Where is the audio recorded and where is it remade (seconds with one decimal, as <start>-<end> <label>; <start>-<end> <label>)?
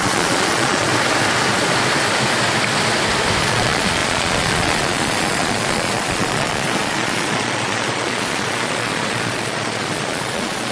0.0-0.9 remade; 0.9-3.4 recorded; 3.4-10.7 remade